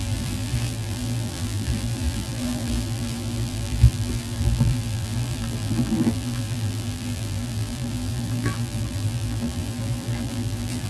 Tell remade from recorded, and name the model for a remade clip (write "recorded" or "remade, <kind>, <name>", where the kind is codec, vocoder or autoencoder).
remade, vocoder, BigVGAN v2